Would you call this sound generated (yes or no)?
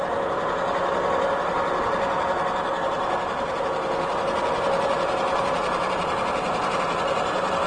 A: no